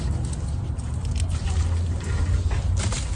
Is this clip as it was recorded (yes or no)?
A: yes